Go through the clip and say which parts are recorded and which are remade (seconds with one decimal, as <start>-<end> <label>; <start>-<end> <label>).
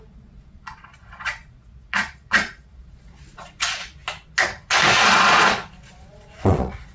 0.0-3.9 remade; 3.9-5.1 recorded; 5.1-6.9 remade